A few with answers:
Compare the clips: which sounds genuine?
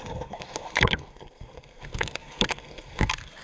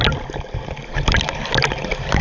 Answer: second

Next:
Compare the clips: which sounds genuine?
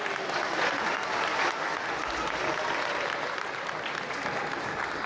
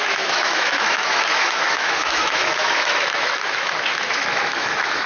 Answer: first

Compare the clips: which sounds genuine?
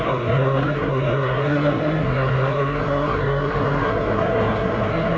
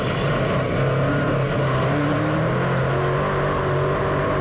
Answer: second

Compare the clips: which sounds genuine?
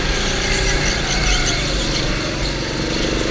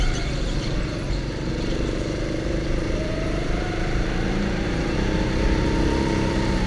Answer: first